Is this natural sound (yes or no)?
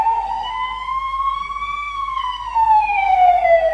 no